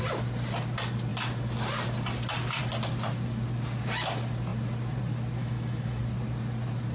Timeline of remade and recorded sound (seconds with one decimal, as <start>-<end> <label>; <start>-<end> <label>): 0.0-5.4 recorded; 5.4-6.0 remade; 6.0-6.9 recorded